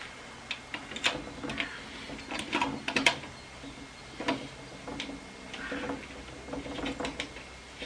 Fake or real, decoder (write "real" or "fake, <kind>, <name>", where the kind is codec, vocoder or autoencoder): real